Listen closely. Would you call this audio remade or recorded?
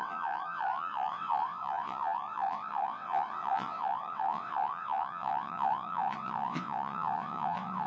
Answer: remade